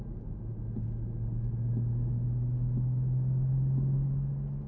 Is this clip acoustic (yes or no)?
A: yes